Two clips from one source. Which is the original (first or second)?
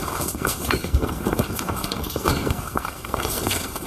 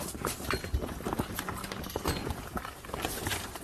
second